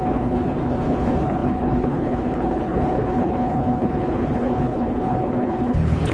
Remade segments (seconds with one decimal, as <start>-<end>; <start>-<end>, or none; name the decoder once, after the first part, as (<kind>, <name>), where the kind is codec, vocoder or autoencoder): 0.0-6.1 (codec, HILCodec)